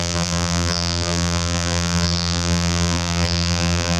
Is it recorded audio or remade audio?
remade